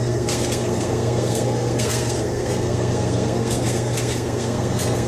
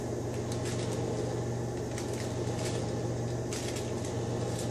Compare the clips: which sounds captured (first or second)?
second